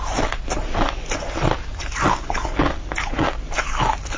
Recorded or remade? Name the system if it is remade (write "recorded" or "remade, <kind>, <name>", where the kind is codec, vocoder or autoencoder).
recorded